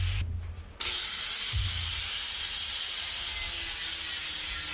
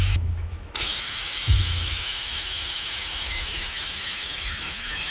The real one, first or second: first